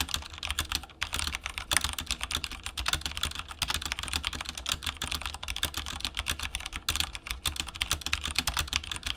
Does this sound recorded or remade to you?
recorded